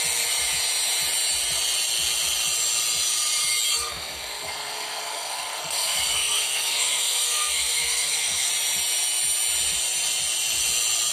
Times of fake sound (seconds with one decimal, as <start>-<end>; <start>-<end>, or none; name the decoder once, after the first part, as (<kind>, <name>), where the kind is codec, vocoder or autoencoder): 3.7-8.5 (codec, SNAC)